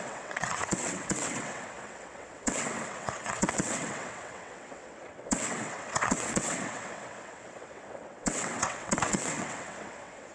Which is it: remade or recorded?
remade